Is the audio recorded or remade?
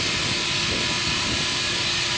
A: recorded